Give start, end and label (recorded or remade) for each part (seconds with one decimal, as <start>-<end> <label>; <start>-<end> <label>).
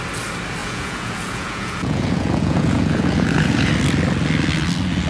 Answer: 0.0-0.6 recorded; 0.6-3.7 remade; 3.7-5.1 recorded